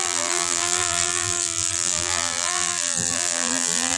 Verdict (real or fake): fake